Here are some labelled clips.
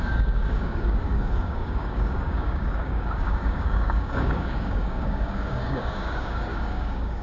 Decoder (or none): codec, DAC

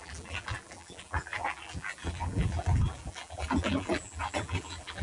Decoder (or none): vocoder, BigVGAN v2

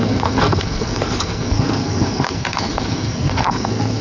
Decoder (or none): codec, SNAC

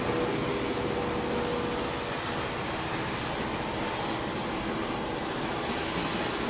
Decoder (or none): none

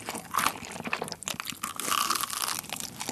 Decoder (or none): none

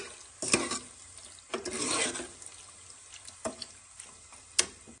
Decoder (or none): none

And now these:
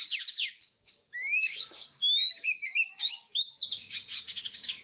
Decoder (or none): codec, DAC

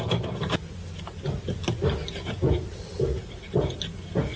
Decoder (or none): none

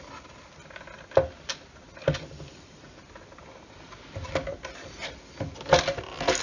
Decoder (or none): none